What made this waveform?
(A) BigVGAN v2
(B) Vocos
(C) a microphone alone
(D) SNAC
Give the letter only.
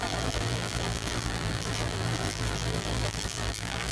A